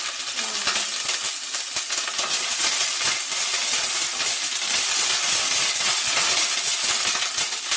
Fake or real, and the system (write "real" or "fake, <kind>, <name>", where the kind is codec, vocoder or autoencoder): real